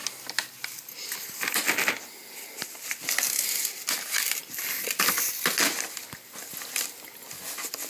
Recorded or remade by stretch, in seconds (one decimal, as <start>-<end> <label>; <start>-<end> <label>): 0.0-7.9 recorded